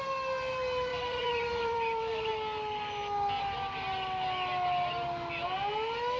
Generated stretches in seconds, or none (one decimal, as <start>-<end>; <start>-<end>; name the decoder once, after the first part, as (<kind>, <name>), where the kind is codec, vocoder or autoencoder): 0.9-2.3 (vocoder, BigVGAN v2)